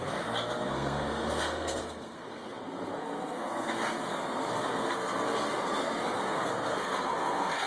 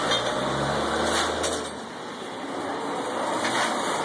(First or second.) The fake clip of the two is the first